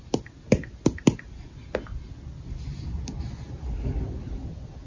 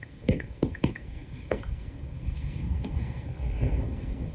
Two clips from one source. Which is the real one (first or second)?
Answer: first